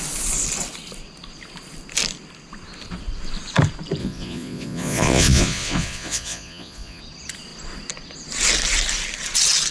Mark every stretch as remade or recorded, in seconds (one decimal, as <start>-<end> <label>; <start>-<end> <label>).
0.0-4.0 recorded; 4.0-7.0 remade; 7.0-9.7 recorded